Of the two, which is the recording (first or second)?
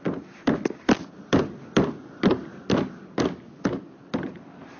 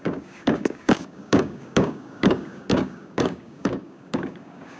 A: first